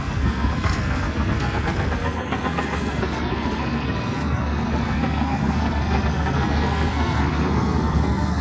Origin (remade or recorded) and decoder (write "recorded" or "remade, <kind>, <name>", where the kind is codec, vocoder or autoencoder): remade, codec, SNAC